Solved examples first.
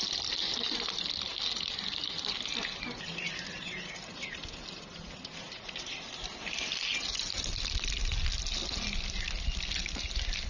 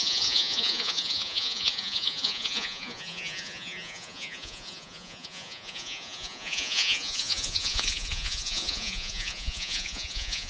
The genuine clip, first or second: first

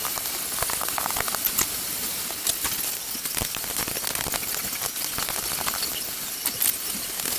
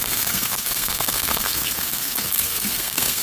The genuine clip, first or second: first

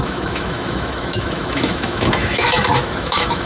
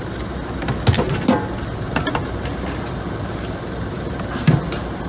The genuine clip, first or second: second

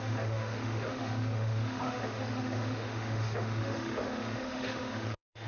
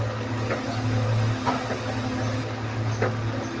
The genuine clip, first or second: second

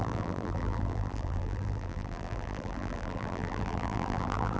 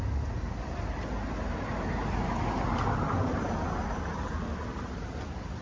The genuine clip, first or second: second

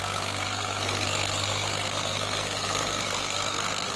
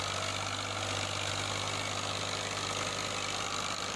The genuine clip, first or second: second